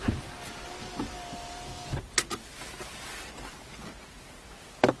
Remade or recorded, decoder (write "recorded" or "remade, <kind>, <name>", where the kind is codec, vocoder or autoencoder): recorded